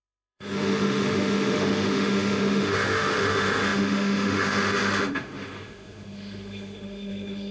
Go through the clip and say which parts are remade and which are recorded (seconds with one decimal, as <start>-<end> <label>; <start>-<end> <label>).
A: 0.0-7.5 remade